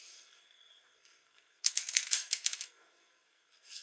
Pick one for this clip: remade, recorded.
remade